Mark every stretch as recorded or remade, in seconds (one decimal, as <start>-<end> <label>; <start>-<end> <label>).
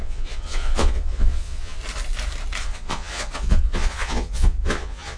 0.0-1.8 remade; 1.8-2.6 recorded; 2.6-5.2 remade